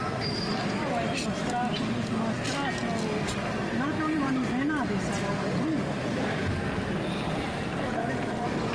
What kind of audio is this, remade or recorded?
recorded